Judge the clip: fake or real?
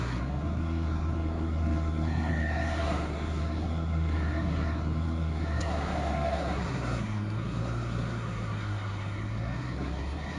fake